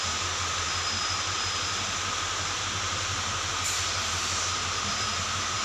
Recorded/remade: remade